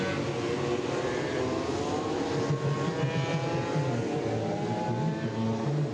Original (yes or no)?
yes